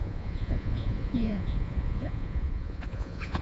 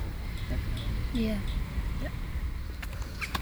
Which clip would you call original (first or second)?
second